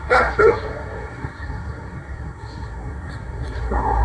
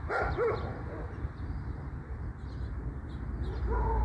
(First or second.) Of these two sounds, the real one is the second